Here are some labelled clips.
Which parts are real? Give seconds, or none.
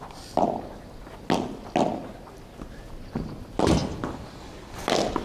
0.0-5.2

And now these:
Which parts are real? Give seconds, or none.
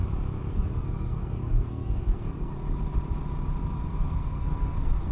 0.0-0.5; 2.5-3.9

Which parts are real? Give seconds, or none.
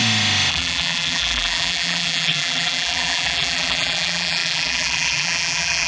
0.0-0.5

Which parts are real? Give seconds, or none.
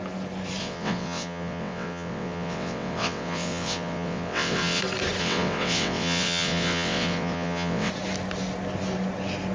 0.0-0.6; 4.8-5.2; 7.9-9.5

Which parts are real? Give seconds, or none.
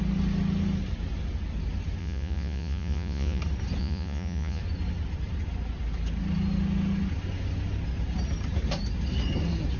0.0-2.0; 3.4-3.8; 4.6-9.8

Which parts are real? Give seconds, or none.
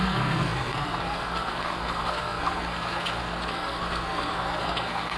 none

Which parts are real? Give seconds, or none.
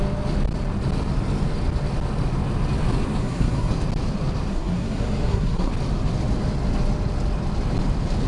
0.0-3.2; 3.7-4.5; 5.7-8.3